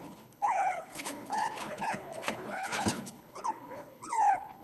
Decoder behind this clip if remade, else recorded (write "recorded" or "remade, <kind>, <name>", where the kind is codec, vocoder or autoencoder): remade, codec, HILCodec